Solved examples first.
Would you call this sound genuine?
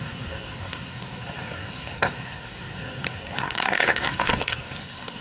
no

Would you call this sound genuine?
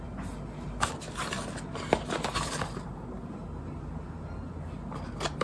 yes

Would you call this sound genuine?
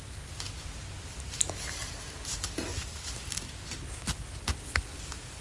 yes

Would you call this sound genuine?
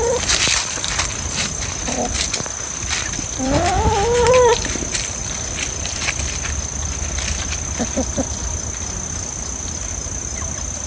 yes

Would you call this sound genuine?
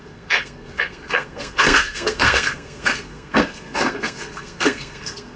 no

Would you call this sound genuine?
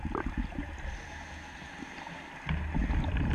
yes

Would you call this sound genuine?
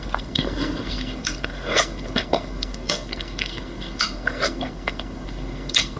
no